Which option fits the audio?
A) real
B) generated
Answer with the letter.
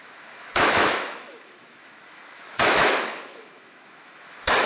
B